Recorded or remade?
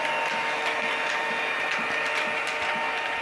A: recorded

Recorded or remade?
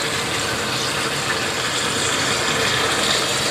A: recorded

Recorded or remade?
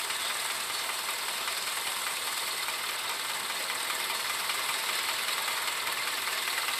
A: recorded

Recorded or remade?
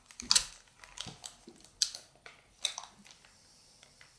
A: recorded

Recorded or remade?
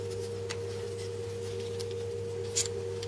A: recorded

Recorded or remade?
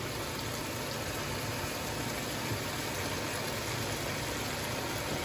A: recorded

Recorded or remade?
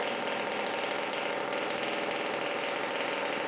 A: recorded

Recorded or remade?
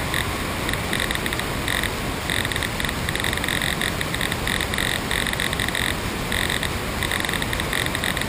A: recorded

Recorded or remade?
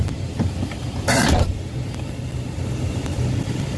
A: remade